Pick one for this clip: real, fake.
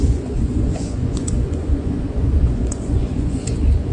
fake